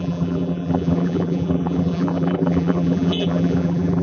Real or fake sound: fake